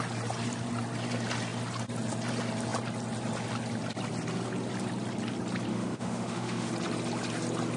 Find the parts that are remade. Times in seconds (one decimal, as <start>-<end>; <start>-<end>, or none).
5.7-6.7